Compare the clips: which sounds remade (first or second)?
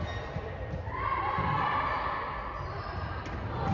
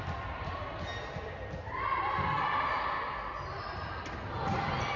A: first